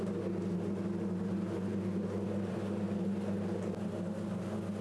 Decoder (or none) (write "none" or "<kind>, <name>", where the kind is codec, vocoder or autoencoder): none